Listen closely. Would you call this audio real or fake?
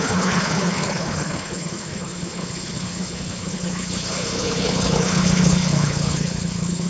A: fake